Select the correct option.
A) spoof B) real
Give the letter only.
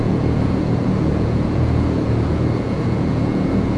A